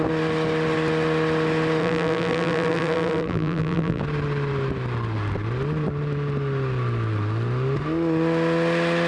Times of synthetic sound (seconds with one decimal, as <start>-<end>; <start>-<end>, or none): 1.8-4.0